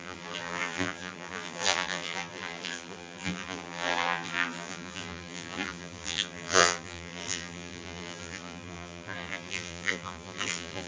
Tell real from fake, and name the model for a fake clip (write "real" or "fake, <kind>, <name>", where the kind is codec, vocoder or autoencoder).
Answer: fake, vocoder, BigVGAN v2